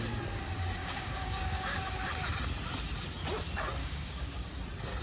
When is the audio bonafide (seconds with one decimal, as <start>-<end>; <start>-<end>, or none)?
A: 0.0-0.8; 1.8-3.8; 4.5-5.0

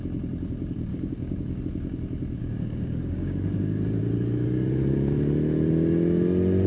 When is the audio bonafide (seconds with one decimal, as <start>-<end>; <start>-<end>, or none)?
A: 0.0-0.9; 1.6-2.4; 4.0-6.7

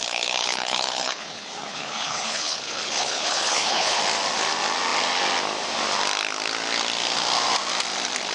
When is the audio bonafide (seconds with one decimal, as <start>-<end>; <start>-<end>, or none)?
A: 4.0-8.3